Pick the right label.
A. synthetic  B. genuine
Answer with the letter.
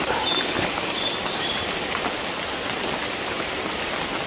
B